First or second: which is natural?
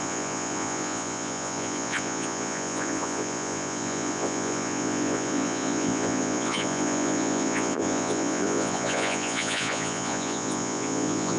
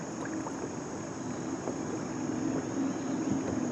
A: second